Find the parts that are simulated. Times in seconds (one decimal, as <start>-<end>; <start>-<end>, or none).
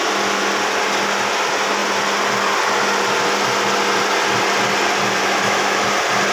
5.2-5.8